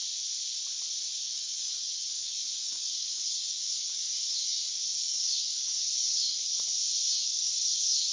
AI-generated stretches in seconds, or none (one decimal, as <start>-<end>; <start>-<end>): 1.0-6.5; 7.2-8.1